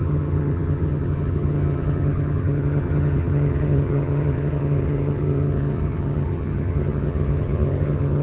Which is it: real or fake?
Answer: fake